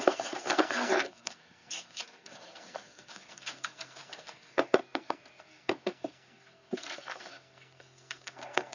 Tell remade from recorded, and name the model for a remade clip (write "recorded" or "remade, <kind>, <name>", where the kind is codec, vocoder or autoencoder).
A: remade, codec, SNAC